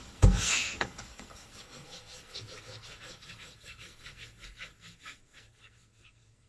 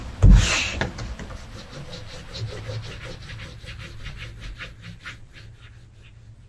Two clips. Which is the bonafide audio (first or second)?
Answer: second